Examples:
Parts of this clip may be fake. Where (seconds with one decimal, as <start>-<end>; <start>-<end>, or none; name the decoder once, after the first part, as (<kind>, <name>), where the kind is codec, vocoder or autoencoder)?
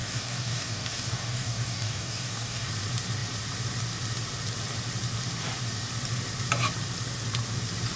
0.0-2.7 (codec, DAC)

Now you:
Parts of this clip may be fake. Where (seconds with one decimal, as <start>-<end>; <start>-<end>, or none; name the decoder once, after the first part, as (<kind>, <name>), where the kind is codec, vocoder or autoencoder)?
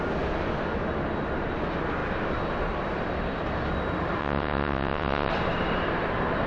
4.2-5.3 (vocoder, WaveNeXt)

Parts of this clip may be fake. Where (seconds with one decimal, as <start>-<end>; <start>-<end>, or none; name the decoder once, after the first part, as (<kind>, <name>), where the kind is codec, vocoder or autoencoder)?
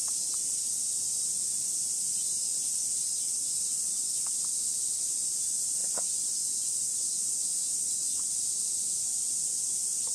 1.1-5.8 (vocoder, BigVGAN v2); 7.1-10.1